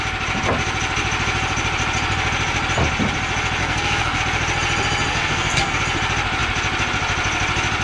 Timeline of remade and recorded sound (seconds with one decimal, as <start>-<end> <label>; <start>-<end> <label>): 0.0-3.6 recorded; 3.6-4.2 remade; 4.2-5.1 recorded; 5.1-5.8 remade; 5.8-7.8 recorded

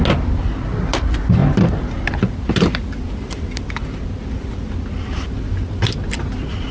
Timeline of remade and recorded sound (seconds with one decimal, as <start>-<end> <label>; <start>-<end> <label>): 0.0-6.7 recorded

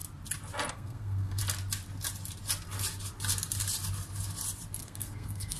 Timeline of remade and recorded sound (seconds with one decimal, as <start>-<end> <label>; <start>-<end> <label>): 0.0-0.7 recorded; 0.7-1.4 remade; 1.4-4.8 recorded; 4.8-5.6 remade

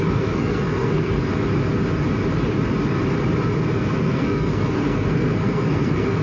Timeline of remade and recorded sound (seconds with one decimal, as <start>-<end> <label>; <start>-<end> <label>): 0.0-1.3 remade; 1.3-3.7 recorded; 3.7-6.2 remade

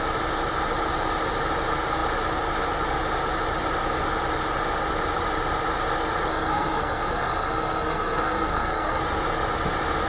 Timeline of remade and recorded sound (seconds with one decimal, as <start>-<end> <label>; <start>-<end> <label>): 0.0-6.3 recorded; 6.3-9.0 remade; 9.0-10.1 recorded

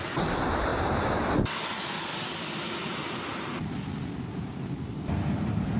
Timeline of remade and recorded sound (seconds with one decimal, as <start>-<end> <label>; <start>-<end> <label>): 0.0-5.8 recorded

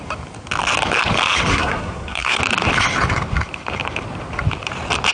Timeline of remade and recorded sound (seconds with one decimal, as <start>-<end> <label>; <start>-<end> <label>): 0.0-1.5 recorded; 1.5-2.4 remade; 2.4-5.1 recorded

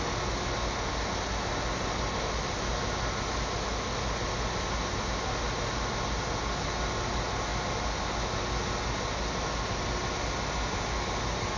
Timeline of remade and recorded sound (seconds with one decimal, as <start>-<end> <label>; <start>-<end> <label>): 0.0-11.6 recorded